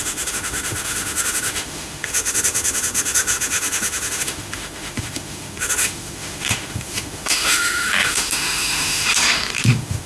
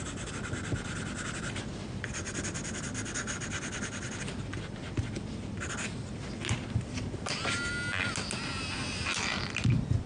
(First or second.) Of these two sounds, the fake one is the first